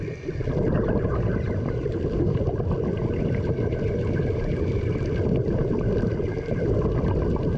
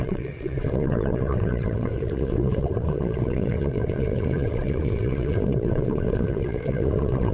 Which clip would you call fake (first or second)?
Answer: second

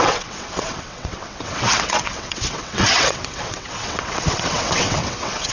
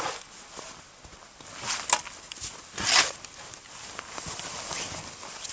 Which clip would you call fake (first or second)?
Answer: first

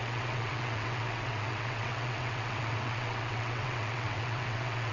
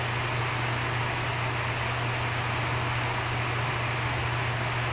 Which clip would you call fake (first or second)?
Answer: first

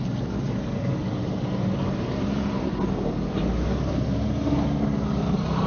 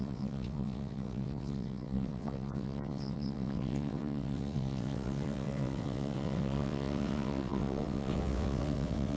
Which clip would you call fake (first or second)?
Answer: second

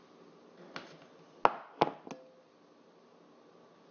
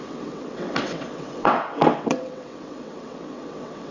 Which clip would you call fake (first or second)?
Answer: second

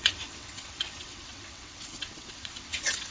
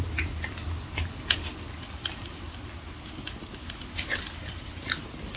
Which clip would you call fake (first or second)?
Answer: first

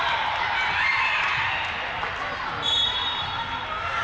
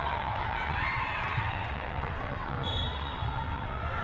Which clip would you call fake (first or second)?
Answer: second